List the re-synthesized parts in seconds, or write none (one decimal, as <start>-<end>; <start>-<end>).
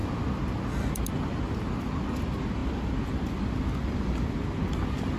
none